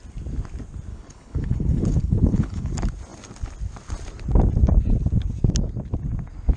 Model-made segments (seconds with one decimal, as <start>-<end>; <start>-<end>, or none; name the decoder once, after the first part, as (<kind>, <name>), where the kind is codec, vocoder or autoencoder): 0.9-2.7 (codec, HILCodec)